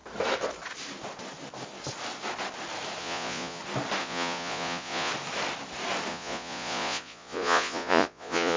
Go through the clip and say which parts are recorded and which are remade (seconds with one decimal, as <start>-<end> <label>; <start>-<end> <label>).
0.0-3.0 recorded; 3.0-3.6 remade; 3.6-4.0 recorded; 4.0-5.1 remade; 5.1-6.1 recorded; 6.1-8.6 remade